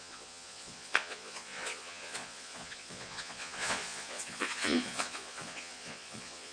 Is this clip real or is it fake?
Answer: fake